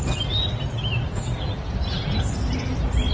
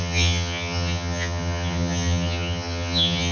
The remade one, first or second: second